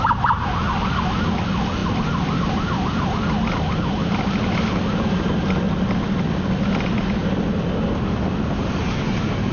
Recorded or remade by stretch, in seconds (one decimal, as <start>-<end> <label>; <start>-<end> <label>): 0.0-9.5 recorded